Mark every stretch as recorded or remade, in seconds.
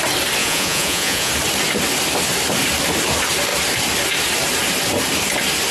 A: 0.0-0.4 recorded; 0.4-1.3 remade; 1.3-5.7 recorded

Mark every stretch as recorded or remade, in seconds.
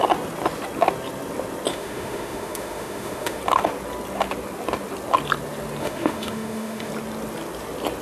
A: 0.0-1.7 recorded; 1.7-3.4 remade; 3.4-5.8 recorded; 5.8-6.9 remade; 6.9-8.0 recorded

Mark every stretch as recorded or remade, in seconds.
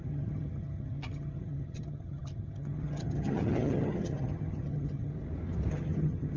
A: 0.0-5.1 remade; 5.1-5.7 recorded; 5.7-6.4 remade